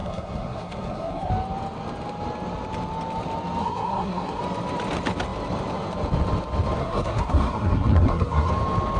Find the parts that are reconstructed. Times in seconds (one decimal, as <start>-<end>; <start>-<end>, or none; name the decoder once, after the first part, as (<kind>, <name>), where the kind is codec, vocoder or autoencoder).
0.0-1.3 (codec, SNAC); 3.6-4.4; 6.8-8.5